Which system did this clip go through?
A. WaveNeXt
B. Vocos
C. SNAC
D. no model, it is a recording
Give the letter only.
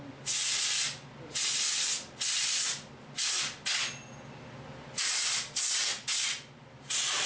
D